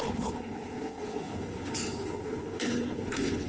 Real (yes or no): no